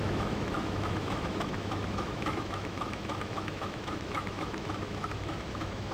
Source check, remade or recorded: remade